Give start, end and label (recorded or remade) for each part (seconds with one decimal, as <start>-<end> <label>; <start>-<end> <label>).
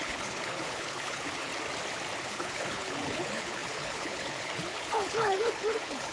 0.0-1.5 remade; 1.5-2.2 recorded; 2.2-6.1 remade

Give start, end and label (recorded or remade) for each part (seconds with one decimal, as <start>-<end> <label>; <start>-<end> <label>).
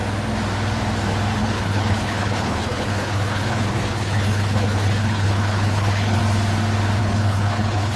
0.0-1.4 recorded; 1.4-6.2 remade; 6.2-7.0 recorded; 7.0-8.0 remade